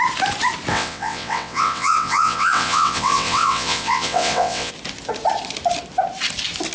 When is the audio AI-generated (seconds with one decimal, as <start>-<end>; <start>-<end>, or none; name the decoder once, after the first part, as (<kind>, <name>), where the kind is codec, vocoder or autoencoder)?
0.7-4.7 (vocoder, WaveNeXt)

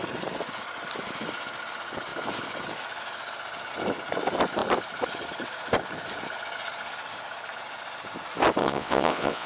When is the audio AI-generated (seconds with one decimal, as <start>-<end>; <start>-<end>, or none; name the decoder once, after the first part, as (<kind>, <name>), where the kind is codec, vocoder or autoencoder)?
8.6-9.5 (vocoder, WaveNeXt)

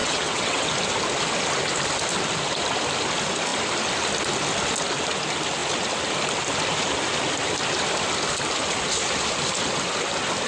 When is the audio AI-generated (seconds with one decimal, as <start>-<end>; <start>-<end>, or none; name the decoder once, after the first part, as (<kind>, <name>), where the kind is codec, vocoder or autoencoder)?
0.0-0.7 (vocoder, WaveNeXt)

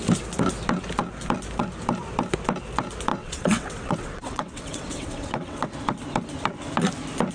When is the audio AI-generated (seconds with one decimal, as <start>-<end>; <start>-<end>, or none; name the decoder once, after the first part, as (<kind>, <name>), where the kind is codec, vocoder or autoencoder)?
3.1-5.7 (vocoder, WaveNeXt)